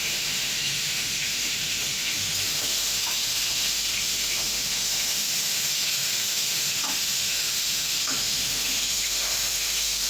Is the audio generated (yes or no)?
yes